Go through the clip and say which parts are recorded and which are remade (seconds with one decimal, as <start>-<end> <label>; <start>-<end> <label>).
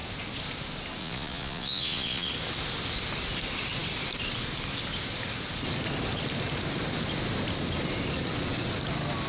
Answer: 0.0-1.0 recorded; 1.0-2.3 remade; 2.3-9.3 recorded